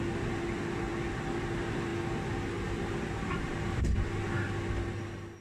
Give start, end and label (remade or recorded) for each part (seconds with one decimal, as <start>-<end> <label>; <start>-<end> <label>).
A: 0.0-5.4 recorded